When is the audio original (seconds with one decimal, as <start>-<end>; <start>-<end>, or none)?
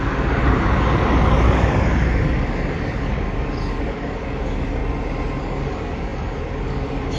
4.8-5.4